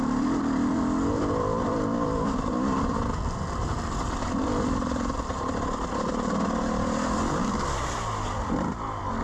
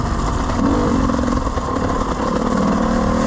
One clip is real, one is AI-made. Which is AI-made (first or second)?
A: first